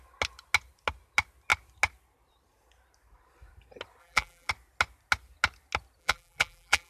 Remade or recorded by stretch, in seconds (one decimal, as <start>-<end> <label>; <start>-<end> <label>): 0.0-4.0 recorded; 4.0-4.5 remade; 4.5-6.0 recorded; 6.0-6.9 remade